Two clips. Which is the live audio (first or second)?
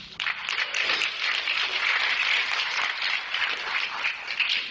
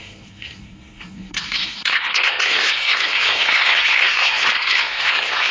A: first